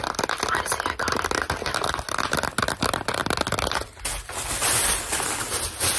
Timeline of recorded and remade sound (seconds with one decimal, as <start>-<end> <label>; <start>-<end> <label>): 0.0-6.0 recorded